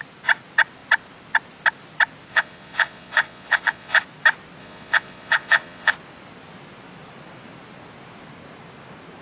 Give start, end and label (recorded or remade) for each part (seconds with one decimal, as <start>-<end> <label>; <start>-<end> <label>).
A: 0.0-2.3 recorded; 2.3-4.0 remade; 4.0-4.6 recorded; 4.6-5.9 remade; 5.9-9.2 recorded